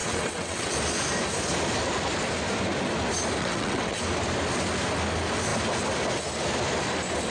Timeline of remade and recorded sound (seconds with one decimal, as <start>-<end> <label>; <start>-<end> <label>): 0.0-0.7 remade; 0.7-3.4 recorded; 3.4-4.0 remade; 4.0-7.3 recorded